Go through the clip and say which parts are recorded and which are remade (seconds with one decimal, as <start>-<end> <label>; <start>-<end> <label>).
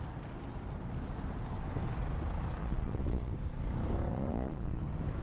0.0-2.6 recorded; 2.6-3.3 remade; 3.3-4.1 recorded; 4.1-4.8 remade; 4.8-5.2 recorded